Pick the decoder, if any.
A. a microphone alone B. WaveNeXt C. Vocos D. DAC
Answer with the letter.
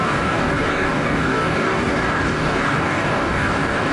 D